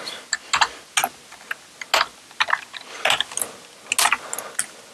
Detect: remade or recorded recorded